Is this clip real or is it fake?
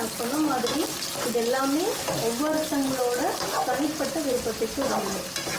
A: real